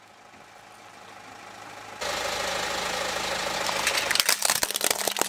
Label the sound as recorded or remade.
recorded